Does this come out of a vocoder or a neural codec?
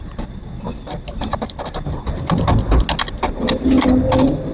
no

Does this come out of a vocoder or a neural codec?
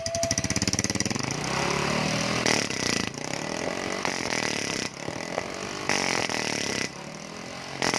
no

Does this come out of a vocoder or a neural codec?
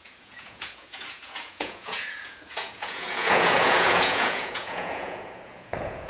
yes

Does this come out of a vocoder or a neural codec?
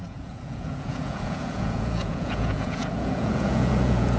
yes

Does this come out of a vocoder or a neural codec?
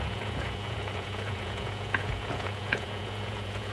yes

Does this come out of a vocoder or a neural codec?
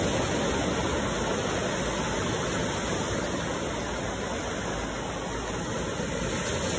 no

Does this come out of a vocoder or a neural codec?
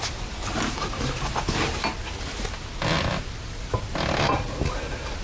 no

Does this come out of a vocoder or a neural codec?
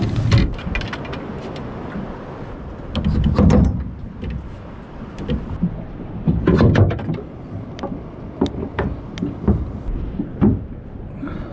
no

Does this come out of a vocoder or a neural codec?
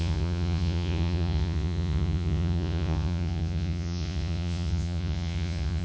yes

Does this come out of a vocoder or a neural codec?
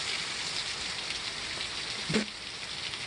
no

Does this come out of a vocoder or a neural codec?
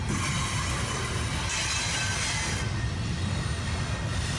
no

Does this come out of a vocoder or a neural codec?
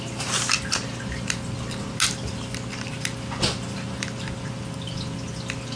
no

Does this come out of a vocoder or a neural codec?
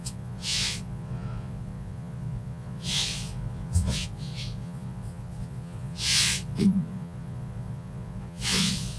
yes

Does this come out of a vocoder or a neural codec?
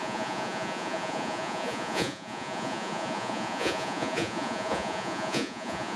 yes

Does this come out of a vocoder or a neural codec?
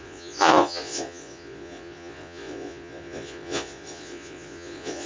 yes